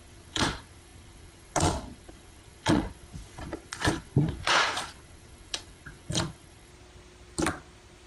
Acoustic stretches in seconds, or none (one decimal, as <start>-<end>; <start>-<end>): 6.7-8.1

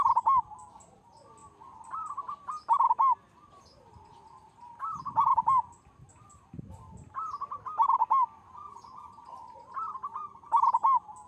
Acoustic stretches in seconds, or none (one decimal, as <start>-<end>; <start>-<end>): 0.0-11.3

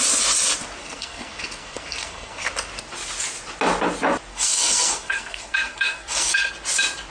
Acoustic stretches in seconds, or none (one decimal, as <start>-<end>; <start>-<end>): 0.0-0.8; 2.5-4.3; 6.5-7.1

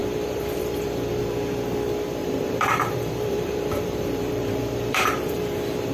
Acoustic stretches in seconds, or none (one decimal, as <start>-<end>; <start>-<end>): 1.2-2.2

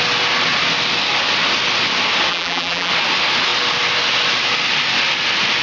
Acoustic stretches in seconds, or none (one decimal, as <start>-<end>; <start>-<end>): 0.0-2.3; 2.9-5.6